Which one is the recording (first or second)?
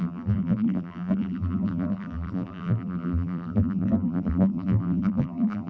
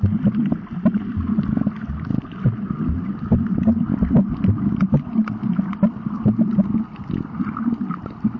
second